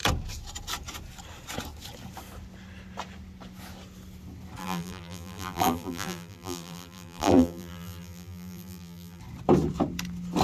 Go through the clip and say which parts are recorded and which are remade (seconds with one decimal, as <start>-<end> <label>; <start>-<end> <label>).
0.0-4.6 recorded; 4.6-9.2 remade; 9.2-10.4 recorded